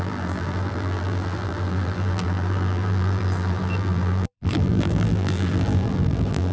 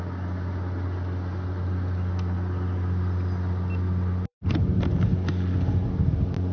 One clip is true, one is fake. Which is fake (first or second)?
first